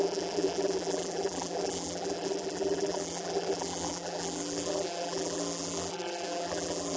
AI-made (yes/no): yes